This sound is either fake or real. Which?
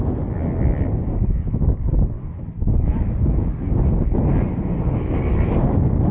real